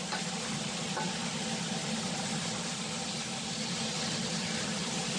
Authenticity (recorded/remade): recorded